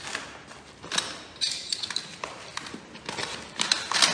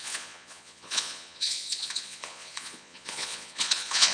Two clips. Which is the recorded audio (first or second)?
first